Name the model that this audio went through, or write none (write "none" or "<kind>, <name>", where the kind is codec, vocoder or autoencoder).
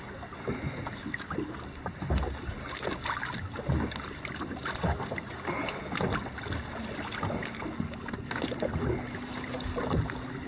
none